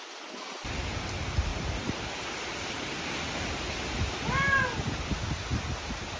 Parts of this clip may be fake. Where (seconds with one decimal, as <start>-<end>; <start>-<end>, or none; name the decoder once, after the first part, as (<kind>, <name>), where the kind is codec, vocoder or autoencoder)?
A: none